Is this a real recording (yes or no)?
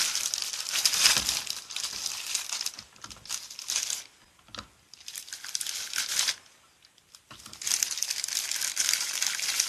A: yes